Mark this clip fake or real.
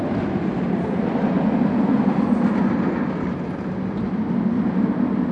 real